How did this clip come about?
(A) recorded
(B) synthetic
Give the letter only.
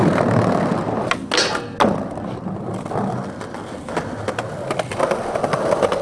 A